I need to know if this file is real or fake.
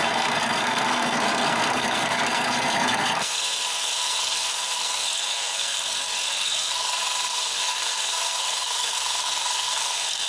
fake